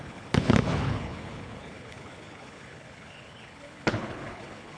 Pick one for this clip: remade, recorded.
remade